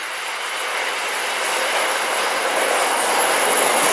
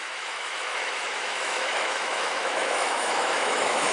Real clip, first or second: first